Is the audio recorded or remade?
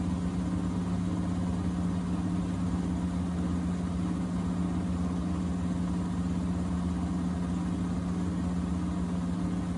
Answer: recorded